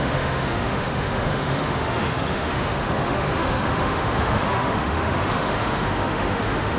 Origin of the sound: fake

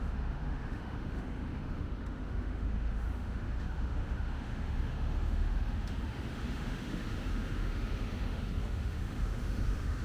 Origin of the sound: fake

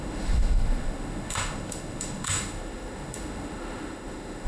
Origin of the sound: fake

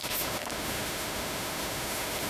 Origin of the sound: fake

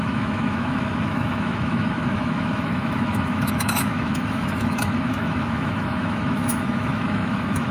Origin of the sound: fake